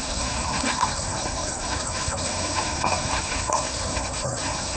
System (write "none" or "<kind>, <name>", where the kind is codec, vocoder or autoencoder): codec, SNAC